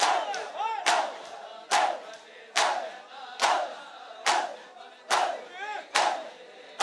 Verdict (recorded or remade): recorded